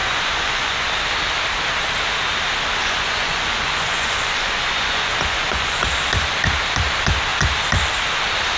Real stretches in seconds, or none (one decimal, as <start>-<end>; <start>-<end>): 0.9-2.8; 5.9-8.6